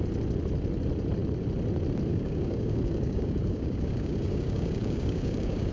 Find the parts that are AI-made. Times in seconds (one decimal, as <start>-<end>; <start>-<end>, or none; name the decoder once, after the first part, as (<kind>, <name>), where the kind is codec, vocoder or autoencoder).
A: 2.1-5.7 (codec, DAC)